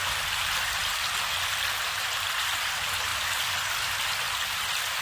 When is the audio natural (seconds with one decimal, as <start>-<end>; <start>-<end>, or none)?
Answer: 0.0-5.0